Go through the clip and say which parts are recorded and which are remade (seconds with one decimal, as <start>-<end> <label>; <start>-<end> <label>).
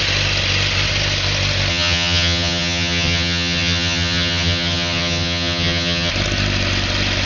0.0-1.7 recorded; 1.7-6.1 remade; 6.1-7.3 recorded